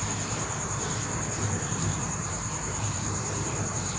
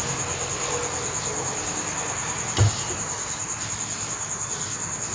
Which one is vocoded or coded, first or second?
first